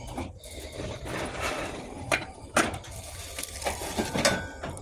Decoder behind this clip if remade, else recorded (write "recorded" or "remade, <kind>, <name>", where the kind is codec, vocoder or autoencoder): recorded